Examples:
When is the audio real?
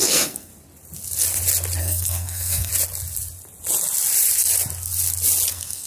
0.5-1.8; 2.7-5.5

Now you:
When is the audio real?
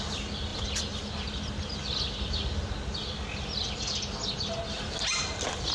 0.0-5.7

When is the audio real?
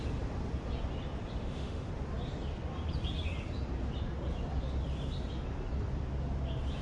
0.0-1.4; 1.9-6.8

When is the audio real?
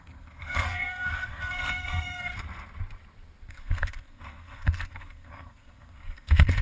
2.3-3.5